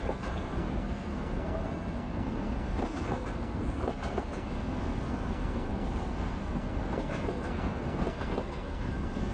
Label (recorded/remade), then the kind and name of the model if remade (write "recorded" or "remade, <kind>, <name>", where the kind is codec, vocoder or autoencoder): remade, codec, SNAC